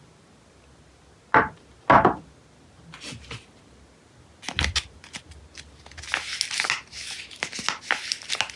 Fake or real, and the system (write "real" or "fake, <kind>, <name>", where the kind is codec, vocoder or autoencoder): real